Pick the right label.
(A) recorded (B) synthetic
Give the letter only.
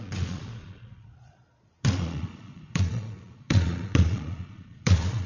B